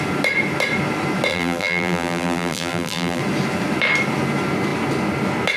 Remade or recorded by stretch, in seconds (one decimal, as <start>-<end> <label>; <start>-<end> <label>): 0.0-1.3 recorded; 1.3-3.2 remade; 3.2-5.6 recorded